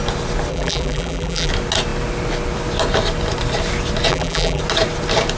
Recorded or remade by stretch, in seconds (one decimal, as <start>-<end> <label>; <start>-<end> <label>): 0.0-0.5 recorded; 0.5-1.5 remade; 1.5-4.1 recorded; 4.1-4.6 remade; 4.6-5.4 recorded